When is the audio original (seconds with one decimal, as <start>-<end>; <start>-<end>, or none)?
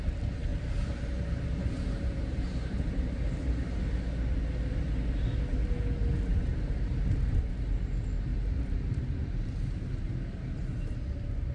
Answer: 0.0-0.5; 3.8-6.3; 6.9-8.3; 11.0-11.5